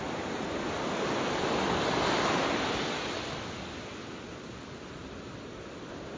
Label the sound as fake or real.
real